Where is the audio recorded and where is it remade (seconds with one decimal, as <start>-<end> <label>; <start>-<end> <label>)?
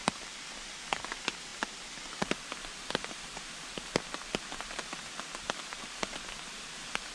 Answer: 0.0-7.1 recorded